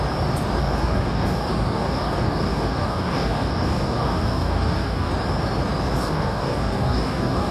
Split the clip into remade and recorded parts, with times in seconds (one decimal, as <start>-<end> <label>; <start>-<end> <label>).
0.0-0.6 recorded; 0.6-5.1 remade; 5.1-6.0 recorded; 6.0-7.5 remade